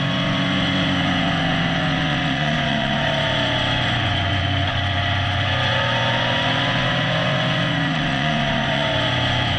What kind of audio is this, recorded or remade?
remade